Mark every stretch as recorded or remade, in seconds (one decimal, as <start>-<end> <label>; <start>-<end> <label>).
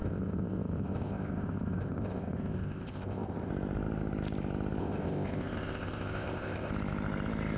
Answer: 0.0-3.5 remade; 3.5-4.8 recorded; 4.8-6.7 remade; 6.7-7.6 recorded